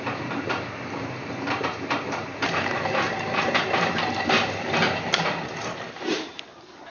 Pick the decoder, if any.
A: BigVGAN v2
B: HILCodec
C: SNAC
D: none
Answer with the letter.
A